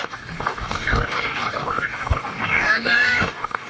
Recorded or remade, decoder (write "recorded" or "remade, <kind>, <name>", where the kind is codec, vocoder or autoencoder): remade, codec, DAC